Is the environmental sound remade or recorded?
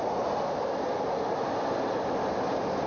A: recorded